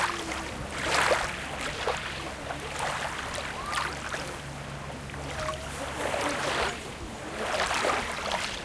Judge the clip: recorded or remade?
recorded